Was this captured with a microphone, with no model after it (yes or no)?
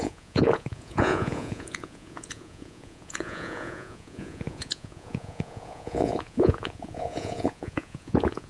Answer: no